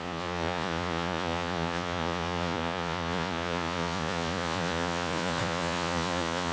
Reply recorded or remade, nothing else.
remade